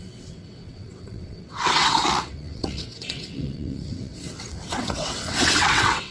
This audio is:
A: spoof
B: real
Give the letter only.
A